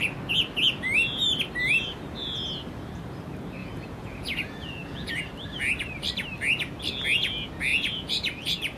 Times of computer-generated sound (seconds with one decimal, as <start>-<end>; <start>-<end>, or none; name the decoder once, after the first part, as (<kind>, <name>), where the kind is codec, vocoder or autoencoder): 3.6-5.1 (vocoder, Vocos); 7.7-8.8